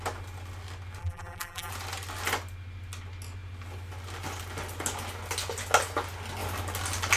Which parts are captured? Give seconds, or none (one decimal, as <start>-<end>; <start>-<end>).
0.0-1.0; 1.7-7.2